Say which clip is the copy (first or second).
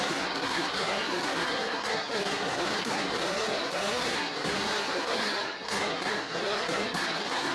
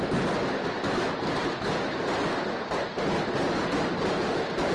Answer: first